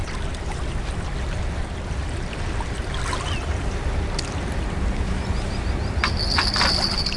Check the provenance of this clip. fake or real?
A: real